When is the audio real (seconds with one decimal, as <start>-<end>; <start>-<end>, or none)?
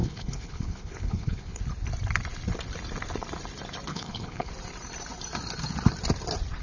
1.6-3.9; 4.5-6.6